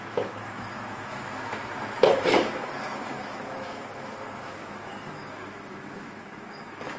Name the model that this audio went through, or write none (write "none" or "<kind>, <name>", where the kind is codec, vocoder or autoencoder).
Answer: autoencoder, DAC-VAE